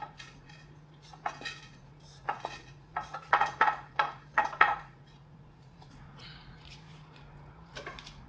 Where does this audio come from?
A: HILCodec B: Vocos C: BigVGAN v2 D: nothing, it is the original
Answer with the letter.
B